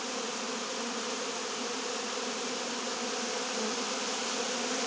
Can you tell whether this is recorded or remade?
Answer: recorded